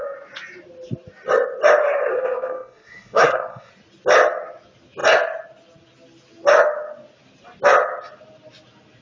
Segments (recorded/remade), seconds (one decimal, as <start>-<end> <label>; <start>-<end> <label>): 0.0-2.1 recorded; 2.1-3.7 remade; 3.7-9.0 recorded